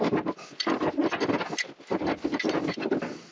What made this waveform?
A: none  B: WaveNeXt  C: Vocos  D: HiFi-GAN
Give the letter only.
A